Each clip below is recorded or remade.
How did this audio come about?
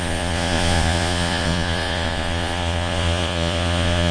remade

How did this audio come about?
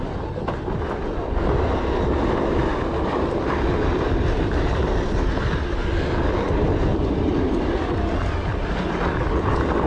recorded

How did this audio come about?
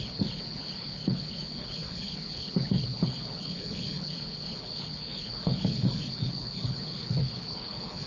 remade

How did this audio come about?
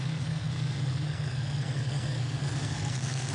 remade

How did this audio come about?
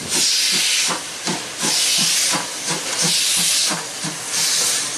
recorded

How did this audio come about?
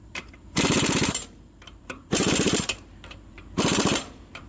remade